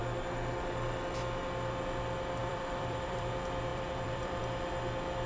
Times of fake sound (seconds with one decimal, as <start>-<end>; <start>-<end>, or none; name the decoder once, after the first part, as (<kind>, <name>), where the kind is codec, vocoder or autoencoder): 2.4-3.3 (vocoder, BigVGAN v2); 3.7-4.4